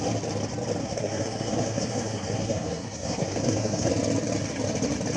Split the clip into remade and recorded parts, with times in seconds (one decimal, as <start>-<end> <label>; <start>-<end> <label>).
0.0-0.8 recorded; 0.8-3.9 remade; 3.9-5.2 recorded